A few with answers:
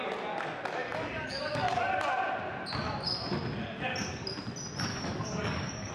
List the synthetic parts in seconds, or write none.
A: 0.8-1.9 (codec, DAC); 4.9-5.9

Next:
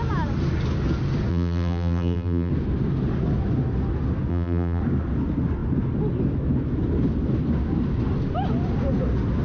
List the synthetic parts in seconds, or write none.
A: 1.3-2.5 (vocoder, BigVGAN v2); 4.3-4.8

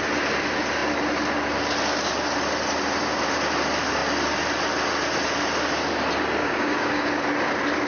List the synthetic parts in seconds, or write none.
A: 6.4-7.1 (codec, DAC)

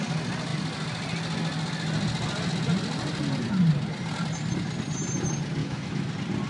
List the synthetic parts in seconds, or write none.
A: 5.6-6.1 (autoencoder, DAC-VAE)

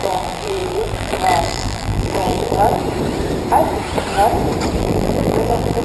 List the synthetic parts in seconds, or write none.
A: 0.0-2.8 (vocoder, BigVGAN v2); 4.8-5.8